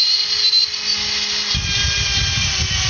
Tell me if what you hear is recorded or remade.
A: recorded